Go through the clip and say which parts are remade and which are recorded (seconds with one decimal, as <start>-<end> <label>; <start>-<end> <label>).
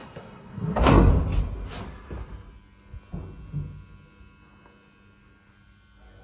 0.0-1.1 remade; 1.1-6.2 recorded